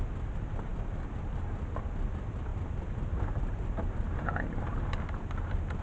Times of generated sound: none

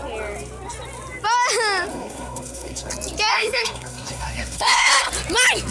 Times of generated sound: 1.9-2.9 (codec, SNAC); 3.3-5.1

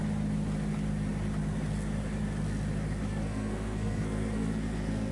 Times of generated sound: 3.1-5.1 (codec, SNAC)